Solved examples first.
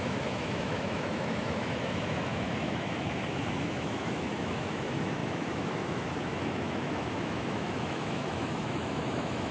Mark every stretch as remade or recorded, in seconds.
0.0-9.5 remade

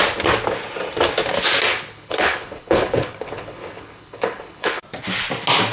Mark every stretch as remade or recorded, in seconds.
0.0-1.7 recorded; 1.7-4.8 remade; 4.8-5.7 recorded

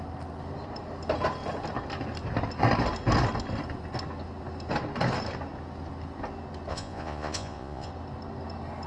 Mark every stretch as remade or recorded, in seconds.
0.0-6.7 recorded; 6.7-7.9 remade; 7.9-8.9 recorded

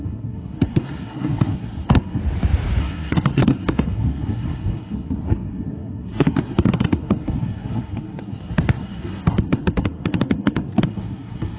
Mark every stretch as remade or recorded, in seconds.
0.0-2.2 remade; 2.2-2.8 recorded; 2.8-11.6 remade

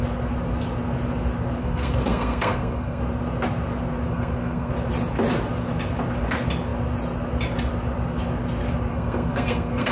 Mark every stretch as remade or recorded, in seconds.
0.0-1.6 recorded; 1.6-3.0 remade; 3.0-4.1 recorded; 4.1-4.7 remade; 4.7-8.9 recorded; 8.9-9.9 remade

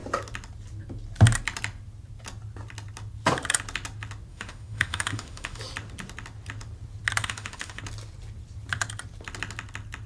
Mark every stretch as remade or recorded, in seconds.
0.0-4.3 recorded; 4.3-5.6 remade; 5.6-7.2 recorded; 7.2-7.8 remade; 7.8-10.1 recorded

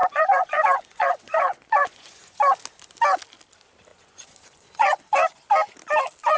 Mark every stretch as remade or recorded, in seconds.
0.0-2.4 remade; 2.4-3.9 recorded; 3.9-5.0 remade; 5.0-6.4 recorded

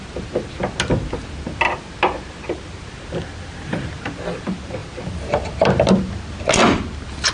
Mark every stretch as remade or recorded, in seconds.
0.0-7.3 recorded